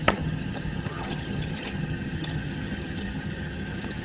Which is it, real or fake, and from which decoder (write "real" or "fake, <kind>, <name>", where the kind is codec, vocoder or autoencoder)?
fake, vocoder, HiFi-GAN